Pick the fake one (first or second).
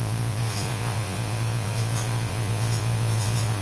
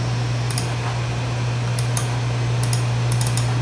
first